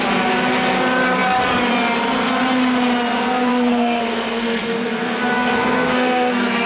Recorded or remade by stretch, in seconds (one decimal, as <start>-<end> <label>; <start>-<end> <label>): 0.0-3.5 recorded; 3.5-6.7 remade